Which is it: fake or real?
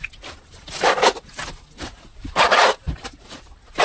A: real